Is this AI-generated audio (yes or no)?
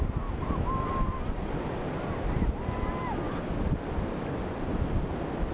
no